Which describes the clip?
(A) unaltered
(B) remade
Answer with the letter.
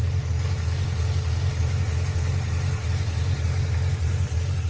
A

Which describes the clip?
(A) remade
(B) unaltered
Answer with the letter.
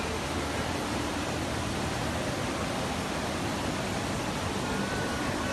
B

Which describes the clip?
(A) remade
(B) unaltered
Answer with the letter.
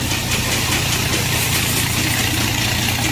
B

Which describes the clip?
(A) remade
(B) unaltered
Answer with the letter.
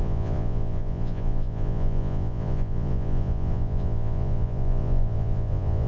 A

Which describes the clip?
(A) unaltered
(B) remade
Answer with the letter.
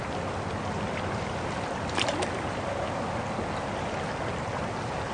A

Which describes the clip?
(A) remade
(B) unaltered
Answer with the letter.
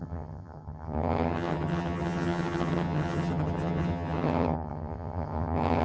A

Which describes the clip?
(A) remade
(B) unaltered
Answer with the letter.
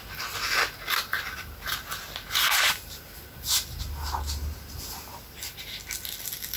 B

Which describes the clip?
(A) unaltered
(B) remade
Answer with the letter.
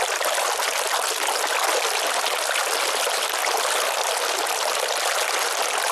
A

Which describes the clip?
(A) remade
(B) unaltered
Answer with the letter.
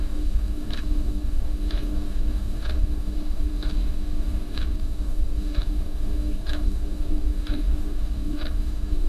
A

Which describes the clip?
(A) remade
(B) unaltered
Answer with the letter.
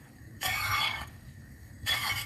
A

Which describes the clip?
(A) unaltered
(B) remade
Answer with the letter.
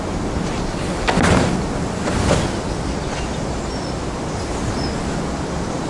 A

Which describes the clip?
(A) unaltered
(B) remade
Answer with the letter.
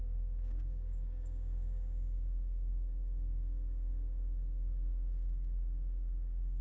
B